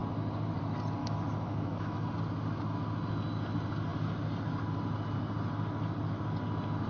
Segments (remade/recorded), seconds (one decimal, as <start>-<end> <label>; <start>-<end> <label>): 0.0-1.0 recorded; 1.0-2.1 remade; 2.1-6.9 recorded